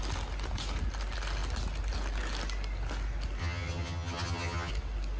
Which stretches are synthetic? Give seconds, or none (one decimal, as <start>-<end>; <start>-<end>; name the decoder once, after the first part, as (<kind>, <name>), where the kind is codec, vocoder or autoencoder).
3.4-4.7 (vocoder, HiFi-GAN)